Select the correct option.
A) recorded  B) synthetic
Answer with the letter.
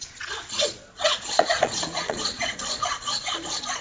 B